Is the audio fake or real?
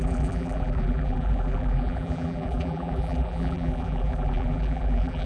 fake